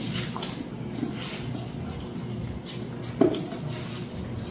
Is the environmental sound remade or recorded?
recorded